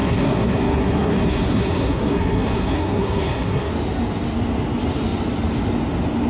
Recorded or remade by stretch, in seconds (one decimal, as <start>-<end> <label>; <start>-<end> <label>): 0.0-3.7 remade; 3.7-6.3 recorded